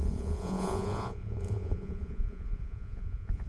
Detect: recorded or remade remade